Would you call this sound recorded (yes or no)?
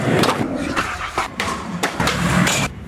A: no